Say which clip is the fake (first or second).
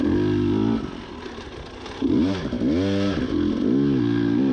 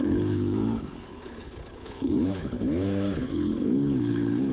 second